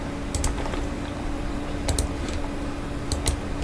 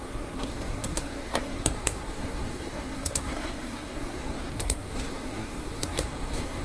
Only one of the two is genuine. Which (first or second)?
first